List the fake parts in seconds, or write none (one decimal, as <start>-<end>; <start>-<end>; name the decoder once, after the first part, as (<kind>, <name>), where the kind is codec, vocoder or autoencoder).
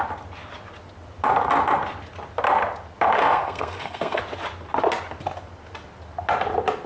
3.2-4.2 (codec, SNAC)